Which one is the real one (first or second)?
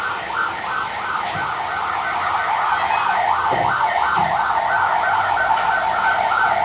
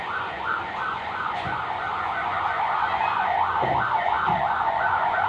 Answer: first